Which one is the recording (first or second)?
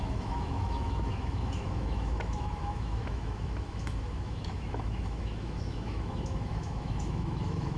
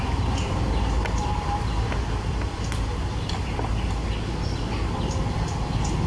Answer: second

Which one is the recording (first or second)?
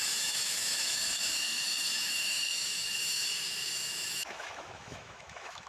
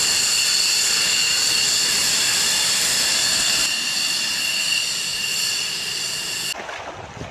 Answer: second